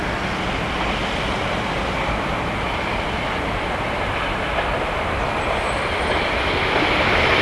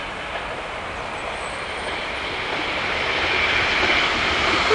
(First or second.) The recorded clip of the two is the second